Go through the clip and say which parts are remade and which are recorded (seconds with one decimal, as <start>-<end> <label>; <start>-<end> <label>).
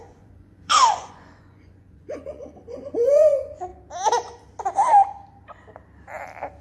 0.0-3.7 remade; 3.7-6.6 recorded